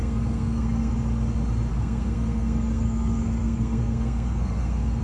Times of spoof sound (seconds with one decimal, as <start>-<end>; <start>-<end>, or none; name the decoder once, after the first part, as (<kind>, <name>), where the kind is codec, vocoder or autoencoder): 0.0-0.9 (codec, SNAC); 1.7-5.0